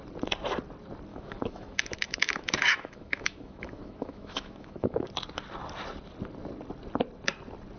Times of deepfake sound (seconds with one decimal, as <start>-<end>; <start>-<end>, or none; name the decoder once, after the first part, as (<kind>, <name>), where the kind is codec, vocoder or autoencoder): 1.1-5.1 (autoencoder, DAC-VAE)